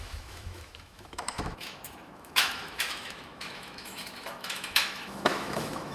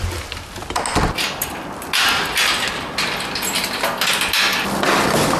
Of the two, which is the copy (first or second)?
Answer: first